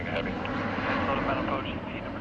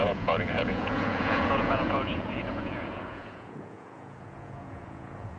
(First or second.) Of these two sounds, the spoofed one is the second